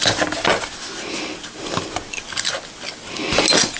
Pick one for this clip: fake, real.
real